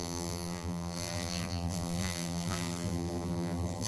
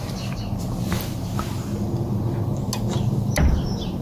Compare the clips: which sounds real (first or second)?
second